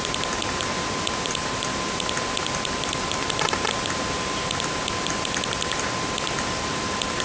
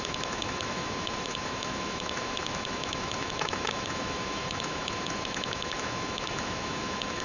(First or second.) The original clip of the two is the first